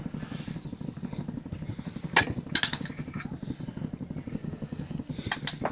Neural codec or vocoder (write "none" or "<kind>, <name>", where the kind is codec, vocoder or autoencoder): none